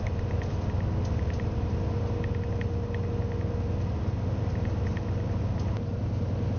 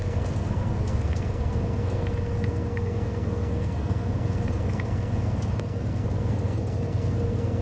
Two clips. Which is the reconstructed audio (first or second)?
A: second